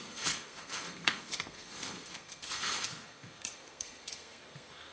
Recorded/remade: remade